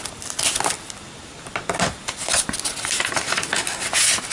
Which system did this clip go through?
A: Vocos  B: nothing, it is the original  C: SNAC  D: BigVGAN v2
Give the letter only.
B